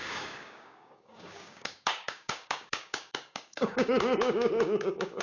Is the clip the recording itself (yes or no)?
no